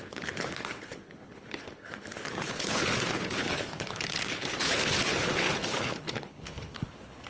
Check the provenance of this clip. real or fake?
fake